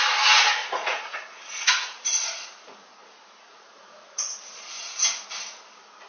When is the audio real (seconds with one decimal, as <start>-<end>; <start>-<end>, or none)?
0.0-0.6; 4.3-6.1